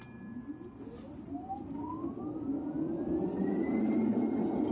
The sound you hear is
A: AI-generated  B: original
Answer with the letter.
B